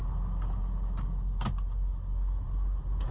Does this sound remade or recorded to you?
recorded